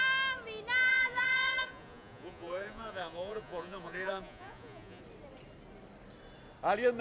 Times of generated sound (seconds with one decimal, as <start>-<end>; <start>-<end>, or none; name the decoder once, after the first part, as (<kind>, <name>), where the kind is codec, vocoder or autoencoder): 0.9-5.0 (vocoder, Vocos)